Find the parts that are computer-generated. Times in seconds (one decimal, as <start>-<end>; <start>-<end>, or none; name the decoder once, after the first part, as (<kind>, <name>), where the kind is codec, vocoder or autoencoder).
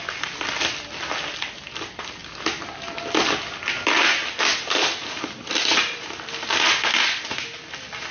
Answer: none